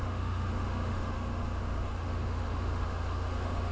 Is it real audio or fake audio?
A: fake